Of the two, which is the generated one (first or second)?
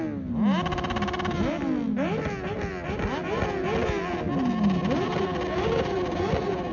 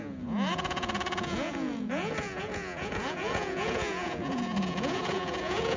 second